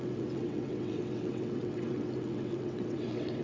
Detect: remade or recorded remade